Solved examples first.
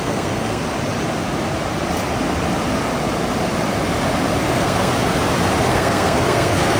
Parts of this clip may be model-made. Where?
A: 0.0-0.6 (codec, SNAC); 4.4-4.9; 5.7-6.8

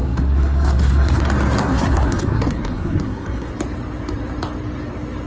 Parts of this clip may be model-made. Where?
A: 0.0-1.2 (codec, SNAC); 1.6-3.5

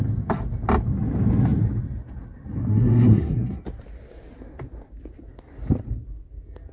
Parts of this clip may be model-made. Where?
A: 2.6-3.6 (codec, SNAC)